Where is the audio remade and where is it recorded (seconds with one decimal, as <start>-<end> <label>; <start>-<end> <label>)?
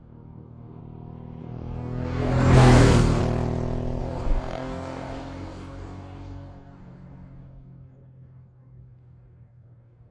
0.0-0.8 remade; 0.8-1.4 recorded; 1.4-3.2 remade; 3.2-4.0 recorded; 4.0-10.1 remade